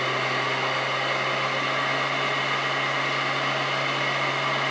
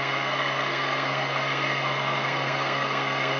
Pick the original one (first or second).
first